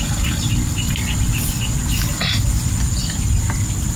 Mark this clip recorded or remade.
recorded